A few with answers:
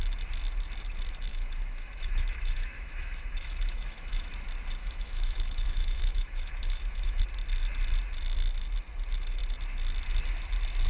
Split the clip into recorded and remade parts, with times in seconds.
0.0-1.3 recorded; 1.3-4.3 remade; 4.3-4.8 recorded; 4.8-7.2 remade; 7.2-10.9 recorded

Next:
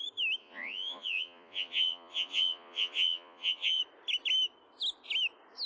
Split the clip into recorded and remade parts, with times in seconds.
0.0-0.4 recorded; 0.4-3.8 remade; 3.8-5.7 recorded